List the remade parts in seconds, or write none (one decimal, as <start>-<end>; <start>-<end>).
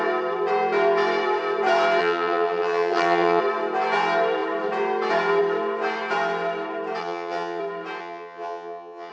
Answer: 2.0-3.4; 7.0-7.6; 8.0-9.1